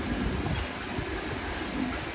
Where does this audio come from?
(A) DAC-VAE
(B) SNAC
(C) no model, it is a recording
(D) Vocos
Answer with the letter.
C